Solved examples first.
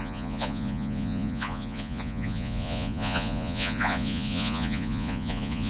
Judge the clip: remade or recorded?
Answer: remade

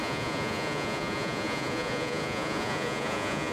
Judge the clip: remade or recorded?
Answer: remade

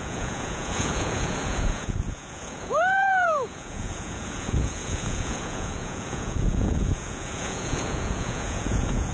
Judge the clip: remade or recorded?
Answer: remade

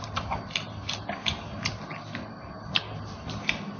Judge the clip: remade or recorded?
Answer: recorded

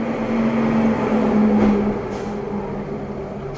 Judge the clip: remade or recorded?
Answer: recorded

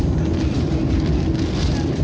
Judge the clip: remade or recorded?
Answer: recorded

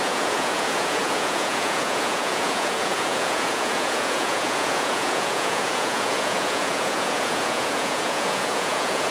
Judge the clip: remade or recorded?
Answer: remade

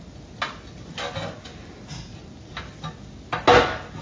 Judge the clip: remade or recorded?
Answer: recorded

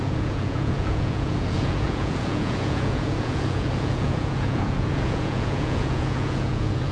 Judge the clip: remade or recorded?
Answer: remade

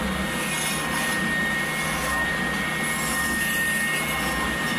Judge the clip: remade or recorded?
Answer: recorded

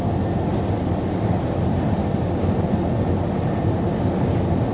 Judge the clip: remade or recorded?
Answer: recorded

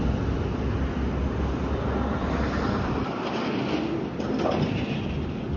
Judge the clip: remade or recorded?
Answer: recorded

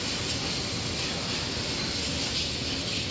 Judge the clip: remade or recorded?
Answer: recorded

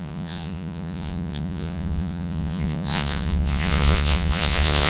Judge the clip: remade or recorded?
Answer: remade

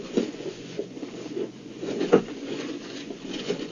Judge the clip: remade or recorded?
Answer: remade